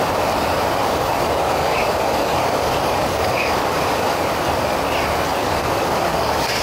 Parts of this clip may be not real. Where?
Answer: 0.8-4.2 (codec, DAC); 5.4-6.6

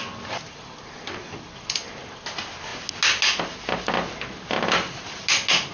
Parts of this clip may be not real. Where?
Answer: none